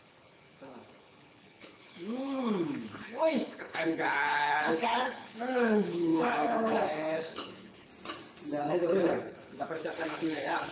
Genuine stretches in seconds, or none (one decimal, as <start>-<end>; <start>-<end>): 7.9-8.6